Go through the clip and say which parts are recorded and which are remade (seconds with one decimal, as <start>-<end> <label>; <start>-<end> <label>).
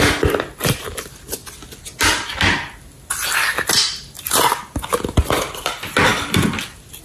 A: 0.0-7.0 recorded